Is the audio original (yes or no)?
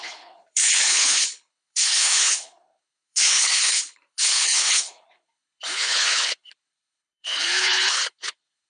no